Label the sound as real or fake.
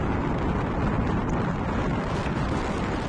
real